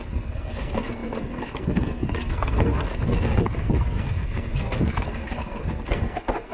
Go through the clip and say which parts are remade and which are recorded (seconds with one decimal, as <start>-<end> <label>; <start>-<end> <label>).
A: 0.0-6.5 remade